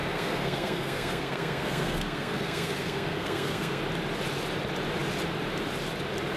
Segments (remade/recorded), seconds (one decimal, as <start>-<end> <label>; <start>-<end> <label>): 0.0-3.8 remade; 3.8-6.4 recorded